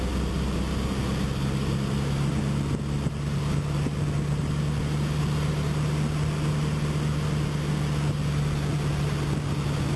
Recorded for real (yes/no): yes